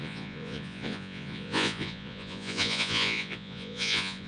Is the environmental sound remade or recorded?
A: remade